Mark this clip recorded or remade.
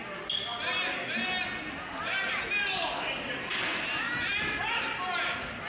recorded